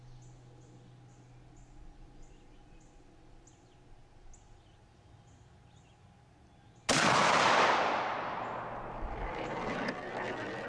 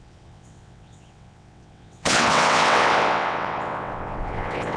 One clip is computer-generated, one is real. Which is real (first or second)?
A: first